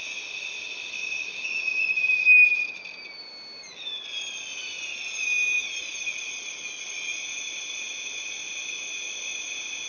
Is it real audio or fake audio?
real